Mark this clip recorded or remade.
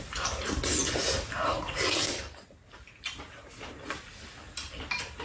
recorded